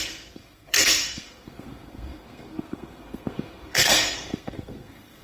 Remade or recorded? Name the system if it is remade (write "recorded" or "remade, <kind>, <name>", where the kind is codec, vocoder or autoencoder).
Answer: remade, codec, SNAC